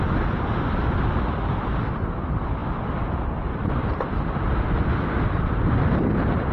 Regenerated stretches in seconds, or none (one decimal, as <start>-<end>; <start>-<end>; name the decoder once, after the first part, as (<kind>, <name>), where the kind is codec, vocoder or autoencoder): none